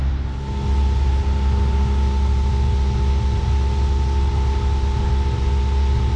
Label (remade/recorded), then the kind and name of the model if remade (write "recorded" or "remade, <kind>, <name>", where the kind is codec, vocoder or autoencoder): recorded